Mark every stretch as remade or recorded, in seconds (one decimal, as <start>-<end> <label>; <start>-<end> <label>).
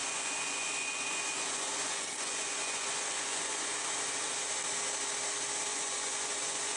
0.0-3.8 remade; 3.8-5.7 recorded; 5.7-6.8 remade